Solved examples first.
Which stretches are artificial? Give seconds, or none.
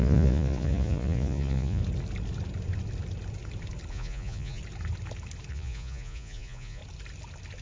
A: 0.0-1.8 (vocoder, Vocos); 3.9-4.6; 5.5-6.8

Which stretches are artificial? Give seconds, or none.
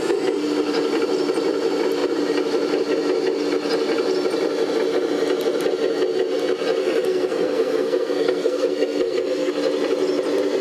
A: 6.8-9.5 (codec, SNAC)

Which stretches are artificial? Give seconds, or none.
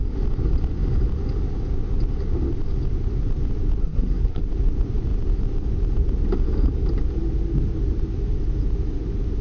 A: 3.8-4.4 (codec, SNAC)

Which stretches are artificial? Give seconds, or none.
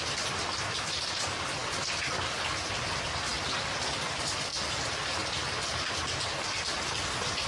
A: none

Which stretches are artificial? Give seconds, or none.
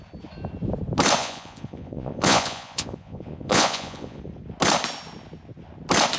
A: 1.2-4.2 (vocoder, Vocos)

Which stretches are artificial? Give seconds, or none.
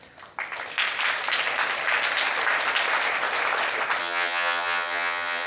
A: 4.0-5.5 (vocoder, HiFi-GAN)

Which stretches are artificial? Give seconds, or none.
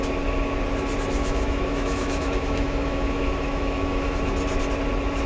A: 1.2-4.3 (autoencoder, DAC-VAE)